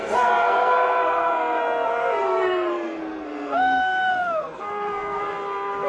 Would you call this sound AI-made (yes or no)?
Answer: yes